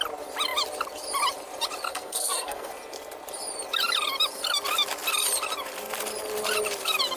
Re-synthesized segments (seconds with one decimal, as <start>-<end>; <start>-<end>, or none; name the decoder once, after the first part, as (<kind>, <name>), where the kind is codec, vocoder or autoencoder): 1.9-2.7 (codec, SNAC)